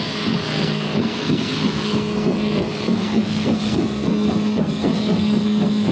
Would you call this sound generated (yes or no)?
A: yes